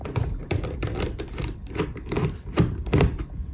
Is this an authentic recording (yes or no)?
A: no